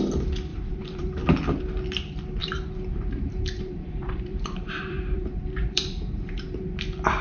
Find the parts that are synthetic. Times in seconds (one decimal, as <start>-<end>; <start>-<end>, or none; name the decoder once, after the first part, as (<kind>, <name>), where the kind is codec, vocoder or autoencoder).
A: 0.5-1.2 (vocoder, BigVGAN v2); 2.4-6.7